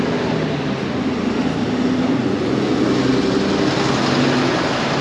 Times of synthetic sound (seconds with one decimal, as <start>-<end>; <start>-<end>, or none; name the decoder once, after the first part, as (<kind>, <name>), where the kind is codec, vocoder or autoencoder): 2.2-2.8 (vocoder, Vocos)